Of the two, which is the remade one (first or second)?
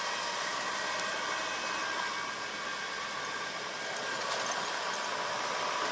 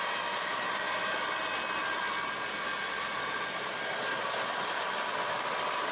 first